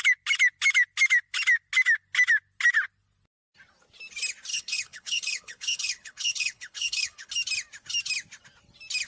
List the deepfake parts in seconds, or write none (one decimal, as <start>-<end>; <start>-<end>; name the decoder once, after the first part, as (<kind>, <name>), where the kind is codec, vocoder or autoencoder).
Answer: 4.5-7.3 (codec, HILCodec)